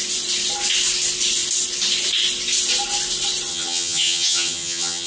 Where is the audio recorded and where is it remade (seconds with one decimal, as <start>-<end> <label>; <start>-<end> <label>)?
0.0-3.5 recorded; 3.5-5.1 remade